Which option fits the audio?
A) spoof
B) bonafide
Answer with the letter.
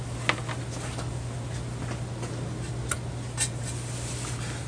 B